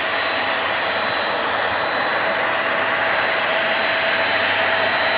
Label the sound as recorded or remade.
recorded